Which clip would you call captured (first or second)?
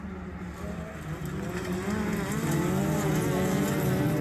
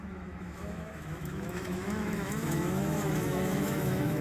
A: first